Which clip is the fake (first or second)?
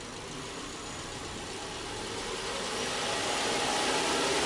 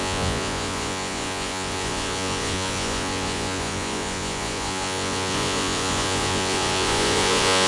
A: second